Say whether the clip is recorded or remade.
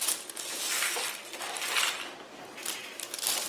recorded